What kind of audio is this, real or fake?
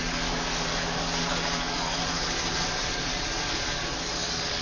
fake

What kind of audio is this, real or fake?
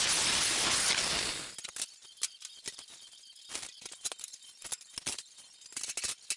real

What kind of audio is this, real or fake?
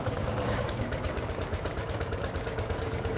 fake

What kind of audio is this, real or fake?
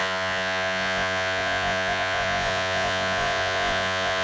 fake